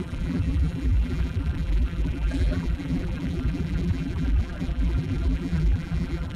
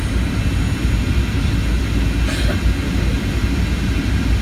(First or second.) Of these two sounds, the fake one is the first